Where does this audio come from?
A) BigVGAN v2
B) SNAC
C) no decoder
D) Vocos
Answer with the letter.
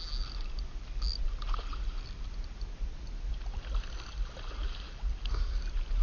C